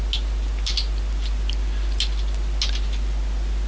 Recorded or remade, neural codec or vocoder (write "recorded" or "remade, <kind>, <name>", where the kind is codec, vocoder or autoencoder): recorded